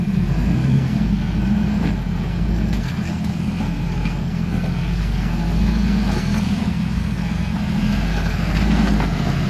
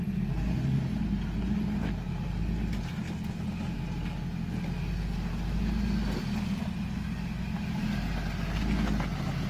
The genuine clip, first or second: second